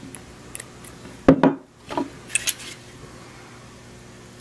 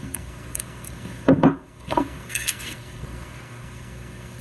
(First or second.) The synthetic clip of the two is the second